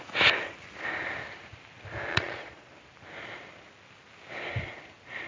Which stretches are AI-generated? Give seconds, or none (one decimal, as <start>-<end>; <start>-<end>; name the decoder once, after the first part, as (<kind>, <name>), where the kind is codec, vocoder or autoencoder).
2.1-2.7 (vocoder, Vocos)